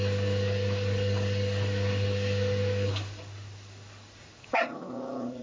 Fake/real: fake